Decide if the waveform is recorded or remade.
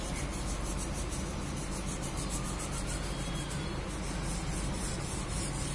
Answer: recorded